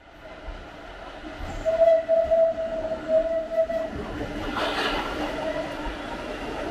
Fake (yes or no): no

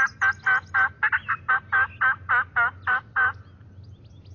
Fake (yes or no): no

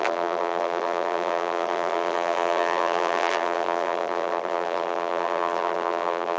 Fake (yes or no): yes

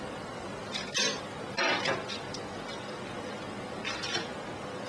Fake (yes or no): no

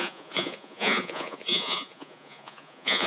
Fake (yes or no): yes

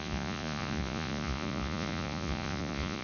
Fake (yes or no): yes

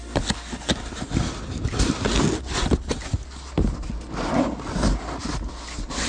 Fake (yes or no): no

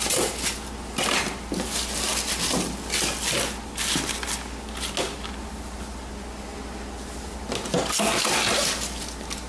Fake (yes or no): no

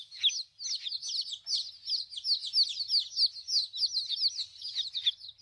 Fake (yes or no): no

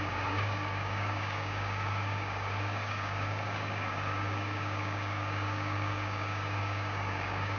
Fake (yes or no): yes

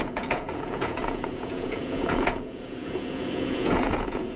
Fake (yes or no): yes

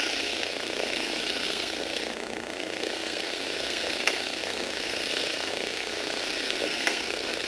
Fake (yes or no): yes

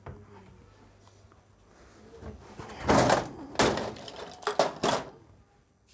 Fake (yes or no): no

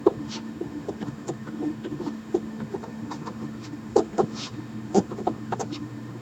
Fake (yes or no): yes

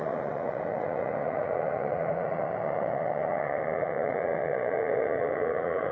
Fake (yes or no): yes